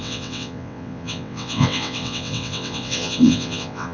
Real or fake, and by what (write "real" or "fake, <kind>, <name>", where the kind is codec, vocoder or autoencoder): fake, vocoder, WaveNeXt